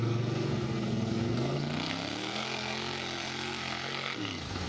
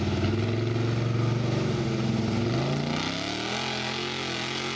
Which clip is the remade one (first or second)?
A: first